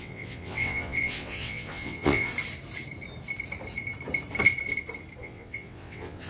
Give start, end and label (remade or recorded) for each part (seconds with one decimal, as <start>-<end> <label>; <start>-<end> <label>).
0.0-2.3 remade; 2.3-5.2 recorded; 5.2-6.3 remade